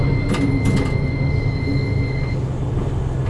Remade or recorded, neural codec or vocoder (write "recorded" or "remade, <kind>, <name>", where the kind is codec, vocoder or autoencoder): recorded